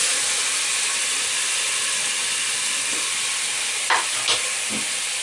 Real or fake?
real